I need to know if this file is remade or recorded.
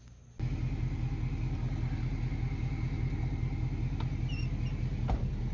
recorded